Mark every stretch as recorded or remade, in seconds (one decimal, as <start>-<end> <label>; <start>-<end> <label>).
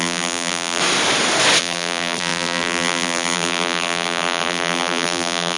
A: 0.0-0.8 remade; 0.8-1.6 recorded; 1.6-5.6 remade